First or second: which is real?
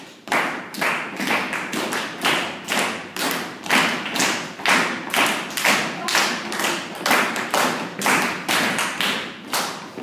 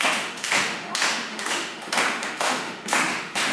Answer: first